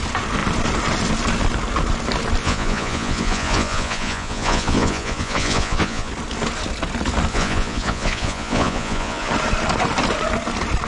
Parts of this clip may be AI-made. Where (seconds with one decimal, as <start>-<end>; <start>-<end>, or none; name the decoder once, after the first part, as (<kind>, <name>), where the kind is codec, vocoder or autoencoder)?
2.4-6.1 (vocoder, Vocos); 7.3-9.3